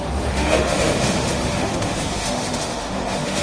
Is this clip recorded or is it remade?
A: remade